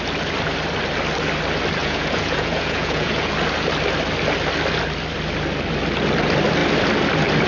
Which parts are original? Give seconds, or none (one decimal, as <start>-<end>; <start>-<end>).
0.0-1.8; 3.3-7.5